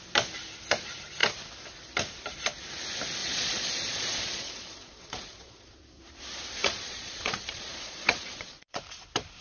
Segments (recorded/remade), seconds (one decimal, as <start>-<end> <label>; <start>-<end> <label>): 0.0-3.2 recorded; 3.2-5.7 remade; 5.7-6.6 recorded; 6.6-8.8 remade; 8.8-9.4 recorded